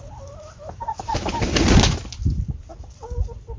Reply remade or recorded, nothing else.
recorded